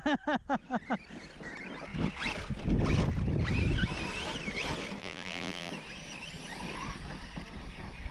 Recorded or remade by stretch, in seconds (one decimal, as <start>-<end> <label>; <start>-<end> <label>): 0.0-5.0 recorded; 5.0-5.7 remade; 5.7-8.1 recorded